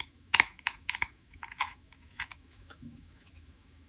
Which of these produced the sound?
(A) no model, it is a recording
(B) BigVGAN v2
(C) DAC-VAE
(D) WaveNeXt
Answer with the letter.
C